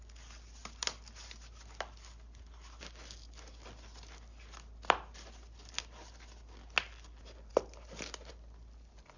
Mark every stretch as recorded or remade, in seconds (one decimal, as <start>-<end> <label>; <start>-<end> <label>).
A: 0.0-9.2 recorded